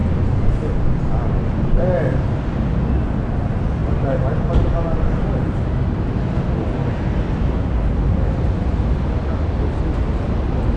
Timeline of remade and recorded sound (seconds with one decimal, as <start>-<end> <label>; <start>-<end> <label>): 0.0-10.8 recorded